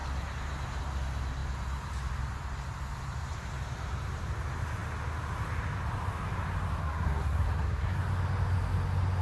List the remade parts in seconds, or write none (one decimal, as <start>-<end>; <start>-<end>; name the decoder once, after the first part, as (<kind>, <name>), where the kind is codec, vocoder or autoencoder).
6.8-8.0 (codec, SNAC)

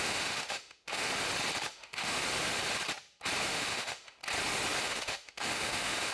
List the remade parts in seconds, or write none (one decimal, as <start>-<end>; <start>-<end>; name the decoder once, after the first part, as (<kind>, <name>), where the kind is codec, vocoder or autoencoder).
0.0-1.1 (autoencoder, DAC-VAE); 1.6-2.2; 3.5-4.2; 4.8-6.1

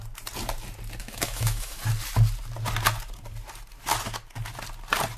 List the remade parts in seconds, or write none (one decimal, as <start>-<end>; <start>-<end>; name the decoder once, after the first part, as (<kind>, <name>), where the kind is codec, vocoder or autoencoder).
1.0-1.8 (autoencoder, DAC-VAE)

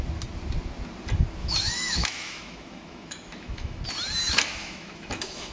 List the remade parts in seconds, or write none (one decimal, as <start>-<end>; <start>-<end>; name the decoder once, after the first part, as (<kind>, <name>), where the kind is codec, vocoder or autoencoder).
1.4-3.8 (autoencoder, DAC-VAE); 4.6-5.5

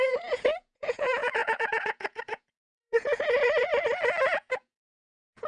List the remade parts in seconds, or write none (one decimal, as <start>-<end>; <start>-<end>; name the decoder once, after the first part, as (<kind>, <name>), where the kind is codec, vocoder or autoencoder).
0.0-3.7 (vocoder, Vocos); 4.2-5.5

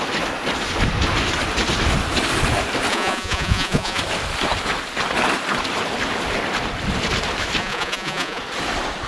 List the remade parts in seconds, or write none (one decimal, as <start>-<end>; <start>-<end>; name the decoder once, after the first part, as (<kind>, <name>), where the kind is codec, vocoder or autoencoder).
2.9-4.0 (vocoder, Vocos); 7.6-8.4